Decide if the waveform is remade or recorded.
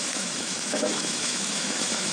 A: remade